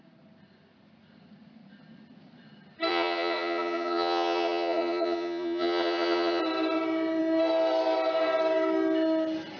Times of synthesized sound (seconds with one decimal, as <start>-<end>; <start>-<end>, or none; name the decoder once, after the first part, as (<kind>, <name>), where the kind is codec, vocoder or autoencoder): 2.9-6.4 (vocoder, Vocos)